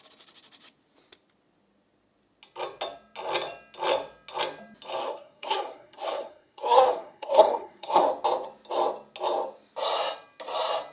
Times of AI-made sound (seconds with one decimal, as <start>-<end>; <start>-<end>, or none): 5.0-8.0